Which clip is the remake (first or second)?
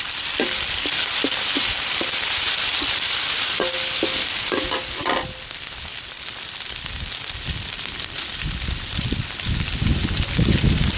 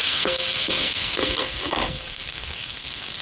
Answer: second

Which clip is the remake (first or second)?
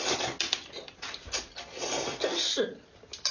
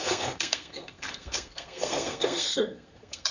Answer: second